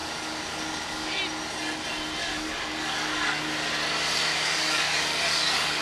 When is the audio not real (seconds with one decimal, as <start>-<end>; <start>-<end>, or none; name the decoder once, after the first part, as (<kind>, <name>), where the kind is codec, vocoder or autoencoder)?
0.0-1.2 (codec, DAC); 2.2-3.4; 4.3-5.8